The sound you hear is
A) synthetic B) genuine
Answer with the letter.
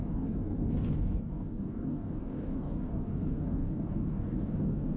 A